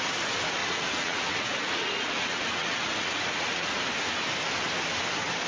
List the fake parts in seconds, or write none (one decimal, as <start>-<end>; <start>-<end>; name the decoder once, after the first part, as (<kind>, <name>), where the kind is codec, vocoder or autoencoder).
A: 0.6-3.8 (vocoder, Vocos)